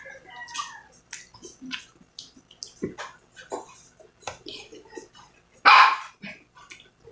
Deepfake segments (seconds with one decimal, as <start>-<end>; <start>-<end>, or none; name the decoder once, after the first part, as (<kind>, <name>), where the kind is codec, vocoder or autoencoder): none